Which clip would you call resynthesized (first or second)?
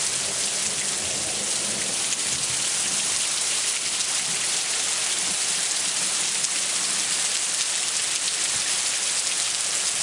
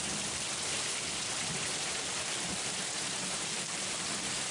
second